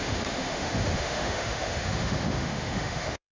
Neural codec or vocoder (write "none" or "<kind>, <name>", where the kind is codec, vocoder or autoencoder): autoencoder, DAC-VAE